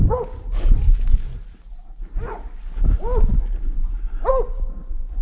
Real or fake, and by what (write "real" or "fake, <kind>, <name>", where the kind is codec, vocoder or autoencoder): real